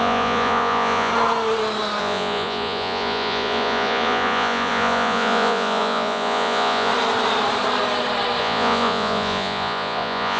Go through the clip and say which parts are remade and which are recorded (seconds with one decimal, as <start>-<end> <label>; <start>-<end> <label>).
0.0-1.1 remade; 1.1-2.0 recorded; 2.0-6.9 remade; 6.9-8.4 recorded; 8.4-10.4 remade